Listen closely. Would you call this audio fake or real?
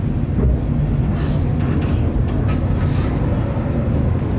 real